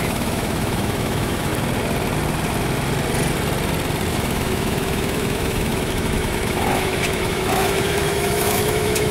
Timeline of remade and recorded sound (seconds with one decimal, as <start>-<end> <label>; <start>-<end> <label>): 0.0-1.5 remade; 1.5-4.1 recorded; 4.1-9.1 remade

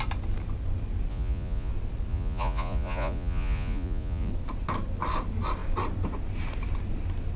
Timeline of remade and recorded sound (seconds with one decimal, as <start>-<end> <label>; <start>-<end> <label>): 0.0-1.1 recorded; 1.1-1.7 remade; 1.7-2.1 recorded; 2.1-4.3 remade; 4.3-7.4 recorded

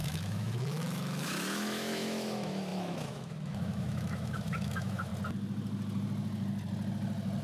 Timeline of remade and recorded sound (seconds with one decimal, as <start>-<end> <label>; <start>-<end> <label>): 0.0-5.1 remade; 5.1-7.4 recorded

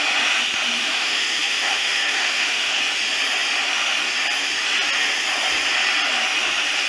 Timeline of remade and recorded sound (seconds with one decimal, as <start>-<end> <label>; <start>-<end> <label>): 0.0-0.8 recorded; 0.8-2.8 remade; 2.8-6.9 recorded

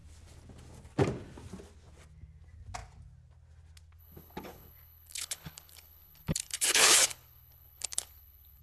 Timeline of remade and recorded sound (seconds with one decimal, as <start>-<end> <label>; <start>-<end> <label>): 0.0-4.0 recorded; 4.0-8.6 remade

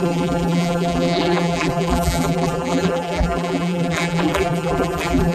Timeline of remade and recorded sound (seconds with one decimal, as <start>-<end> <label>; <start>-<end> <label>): 0.0-5.3 remade

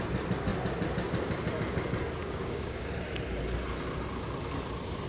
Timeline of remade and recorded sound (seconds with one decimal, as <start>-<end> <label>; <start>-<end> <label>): 0.0-2.2 recorded; 2.2-2.9 remade; 2.9-5.1 recorded